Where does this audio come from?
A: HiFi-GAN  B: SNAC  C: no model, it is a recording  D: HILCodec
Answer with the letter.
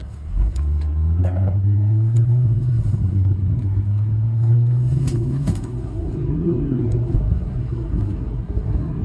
B